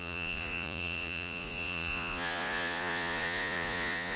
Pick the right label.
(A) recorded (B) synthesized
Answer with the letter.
B